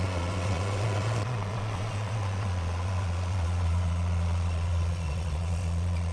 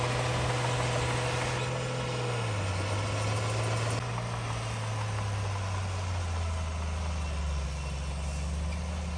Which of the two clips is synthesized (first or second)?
first